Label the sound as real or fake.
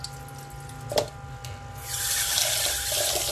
real